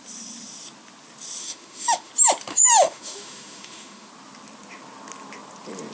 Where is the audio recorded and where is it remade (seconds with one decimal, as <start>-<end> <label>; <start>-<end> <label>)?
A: 0.0-1.4 recorded; 1.4-2.1 remade; 2.1-2.5 recorded; 2.5-4.1 remade; 4.1-5.9 recorded